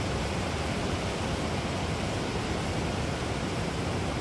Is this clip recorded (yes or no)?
yes